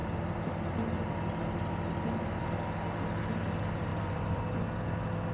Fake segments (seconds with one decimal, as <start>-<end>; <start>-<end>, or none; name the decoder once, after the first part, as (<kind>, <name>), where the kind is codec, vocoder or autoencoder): 3.9-4.4 (vocoder, BigVGAN v2)